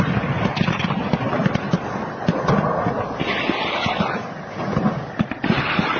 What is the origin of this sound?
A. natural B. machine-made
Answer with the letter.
A